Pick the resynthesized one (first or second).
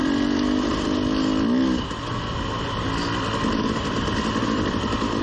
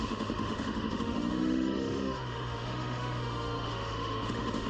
second